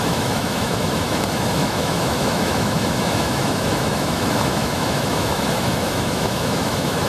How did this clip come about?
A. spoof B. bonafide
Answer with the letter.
A